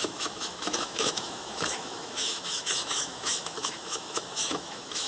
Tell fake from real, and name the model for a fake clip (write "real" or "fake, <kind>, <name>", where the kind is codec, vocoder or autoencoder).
fake, autoencoder, DAC-VAE